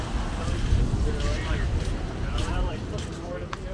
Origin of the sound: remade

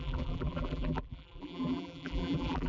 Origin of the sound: remade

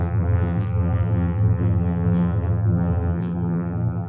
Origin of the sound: remade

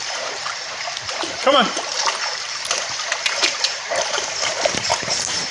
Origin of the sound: remade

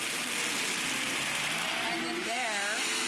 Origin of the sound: recorded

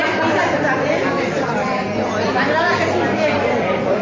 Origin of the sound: recorded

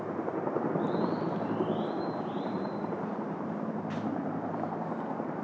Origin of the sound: remade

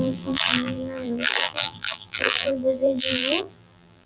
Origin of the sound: remade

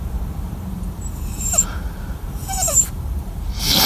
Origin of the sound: remade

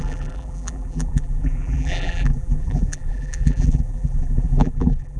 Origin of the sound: remade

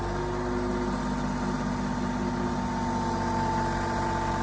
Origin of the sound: recorded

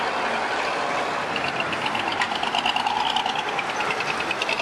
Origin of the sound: recorded